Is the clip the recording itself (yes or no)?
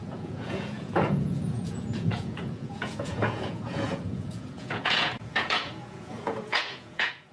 no